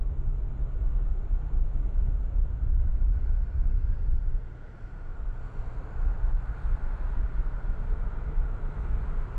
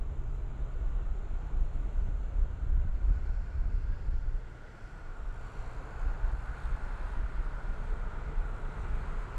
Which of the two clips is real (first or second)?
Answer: first